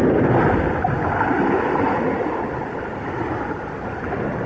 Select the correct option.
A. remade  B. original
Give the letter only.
B